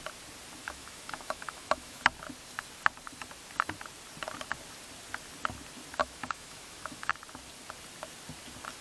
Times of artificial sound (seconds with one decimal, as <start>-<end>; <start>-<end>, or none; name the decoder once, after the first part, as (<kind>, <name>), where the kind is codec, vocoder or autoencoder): 0.6-2.0 (autoencoder, DAC-VAE); 6.0-7.1